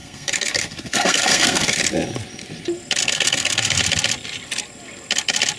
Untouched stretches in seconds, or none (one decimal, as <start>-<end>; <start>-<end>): 1.8-3.0; 3.8-5.6